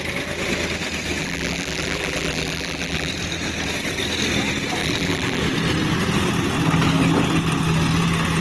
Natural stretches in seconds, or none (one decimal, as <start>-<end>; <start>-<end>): 0.0-1.2; 3.1-4.8; 5.4-8.4